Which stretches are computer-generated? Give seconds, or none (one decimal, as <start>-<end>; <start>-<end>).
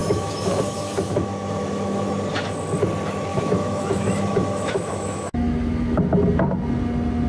0.0-2.1; 3.3-6.0